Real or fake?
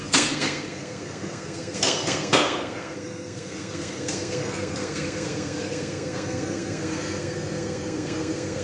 fake